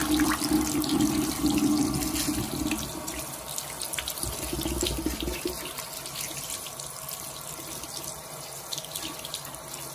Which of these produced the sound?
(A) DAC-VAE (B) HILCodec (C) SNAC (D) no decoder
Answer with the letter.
D